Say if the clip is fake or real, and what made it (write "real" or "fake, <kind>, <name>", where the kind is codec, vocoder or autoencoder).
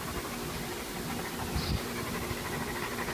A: real